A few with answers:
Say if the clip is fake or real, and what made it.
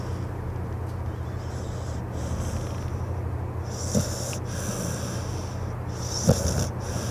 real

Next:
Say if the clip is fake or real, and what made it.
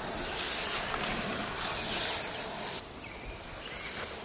real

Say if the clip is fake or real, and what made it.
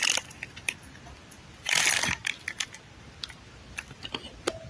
fake, vocoder, BigVGAN v2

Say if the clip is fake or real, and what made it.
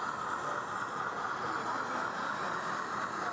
real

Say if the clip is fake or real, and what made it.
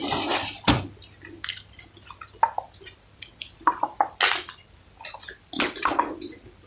real